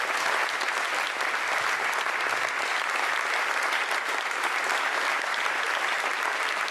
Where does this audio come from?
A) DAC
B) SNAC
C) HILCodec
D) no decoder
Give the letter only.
D